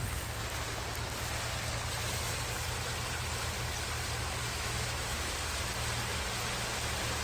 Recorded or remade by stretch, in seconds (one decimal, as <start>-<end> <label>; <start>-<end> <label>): 0.0-4.4 recorded; 4.4-5.3 remade; 5.3-7.2 recorded